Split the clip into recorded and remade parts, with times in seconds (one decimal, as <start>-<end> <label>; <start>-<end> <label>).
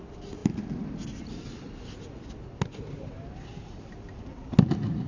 0.0-5.1 recorded